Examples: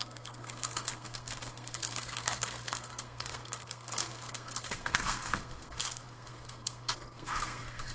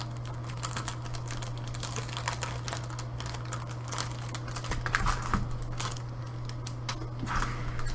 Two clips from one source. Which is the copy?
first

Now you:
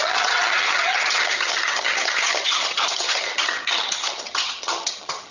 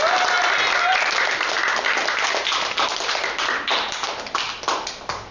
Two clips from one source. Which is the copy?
first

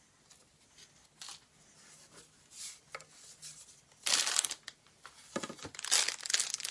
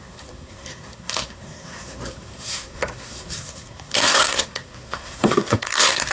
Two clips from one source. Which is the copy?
second